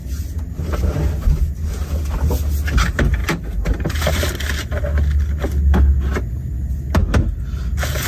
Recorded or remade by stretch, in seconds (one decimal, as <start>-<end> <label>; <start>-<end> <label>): 0.0-1.1 remade; 1.1-3.2 recorded; 3.2-4.3 remade; 4.3-8.1 recorded